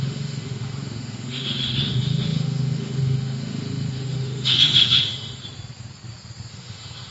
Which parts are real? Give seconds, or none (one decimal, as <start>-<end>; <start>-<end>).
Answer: 5.4-6.5

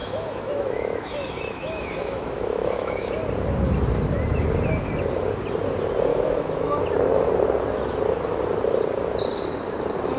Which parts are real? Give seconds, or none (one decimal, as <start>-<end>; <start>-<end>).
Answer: 3.1-6.1; 6.8-10.2

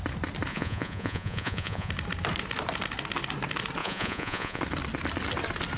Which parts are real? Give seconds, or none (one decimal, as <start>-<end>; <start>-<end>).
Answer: 0.0-0.5; 1.9-3.8; 4.6-5.8

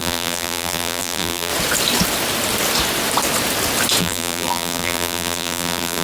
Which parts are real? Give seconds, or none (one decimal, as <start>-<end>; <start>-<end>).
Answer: 1.5-4.0

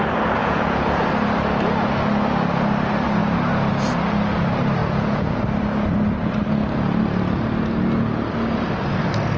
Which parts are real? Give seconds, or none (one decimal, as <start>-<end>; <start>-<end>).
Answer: 0.0-0.4; 1.1-4.8; 5.4-9.4